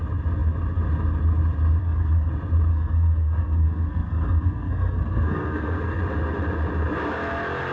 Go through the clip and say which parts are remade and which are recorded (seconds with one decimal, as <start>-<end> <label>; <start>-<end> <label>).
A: 0.0-1.8 recorded; 1.8-2.3 remade; 2.3-2.7 recorded; 2.7-6.0 remade; 6.0-7.7 recorded